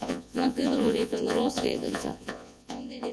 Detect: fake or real fake